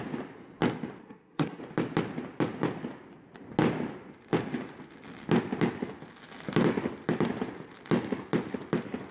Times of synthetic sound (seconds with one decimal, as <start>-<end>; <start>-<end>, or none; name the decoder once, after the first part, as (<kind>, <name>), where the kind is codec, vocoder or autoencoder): 1.0-1.6 (codec, SNAC)